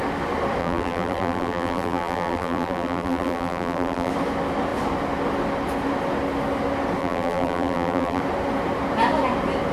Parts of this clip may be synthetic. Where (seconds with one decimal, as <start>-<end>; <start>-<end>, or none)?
0.6-4.1; 7.0-8.2

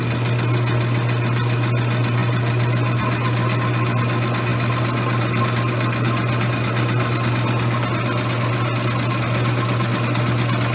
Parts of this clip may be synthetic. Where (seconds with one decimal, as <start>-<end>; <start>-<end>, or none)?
none

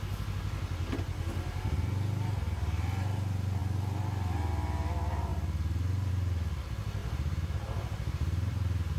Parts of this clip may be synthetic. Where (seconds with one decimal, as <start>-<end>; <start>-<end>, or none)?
7.0-9.0

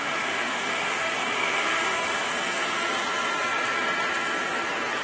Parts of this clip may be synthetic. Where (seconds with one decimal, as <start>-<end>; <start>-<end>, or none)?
0.0-2.0

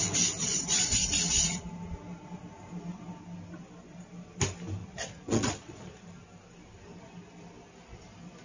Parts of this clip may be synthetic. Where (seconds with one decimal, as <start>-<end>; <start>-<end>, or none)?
0.4-1.6; 4.8-6.0